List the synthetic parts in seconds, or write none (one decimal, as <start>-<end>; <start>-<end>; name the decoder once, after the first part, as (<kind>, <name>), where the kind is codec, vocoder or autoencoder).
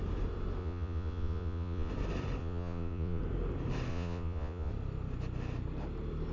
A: 0.6-1.9 (vocoder, Vocos); 2.4-3.2; 3.9-4.7